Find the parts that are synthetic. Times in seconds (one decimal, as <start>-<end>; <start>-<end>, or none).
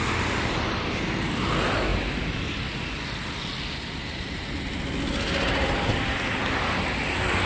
none